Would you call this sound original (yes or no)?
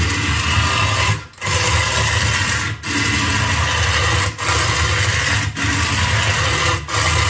yes